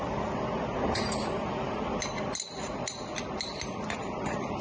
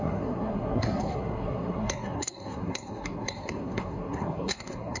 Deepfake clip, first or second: second